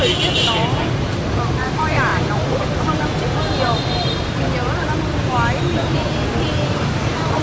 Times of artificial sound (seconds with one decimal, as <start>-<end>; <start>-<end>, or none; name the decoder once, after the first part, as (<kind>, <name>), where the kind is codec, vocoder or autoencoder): 0.0-7.4 (vocoder, BigVGAN v2)

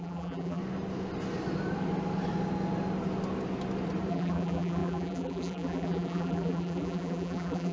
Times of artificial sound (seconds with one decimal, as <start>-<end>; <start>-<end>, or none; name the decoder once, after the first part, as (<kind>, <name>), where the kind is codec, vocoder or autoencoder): 0.0-0.6 (vocoder, BigVGAN v2); 4.1-7.7